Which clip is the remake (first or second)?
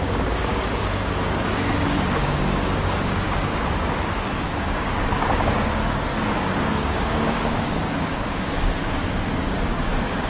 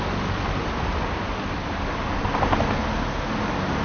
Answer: first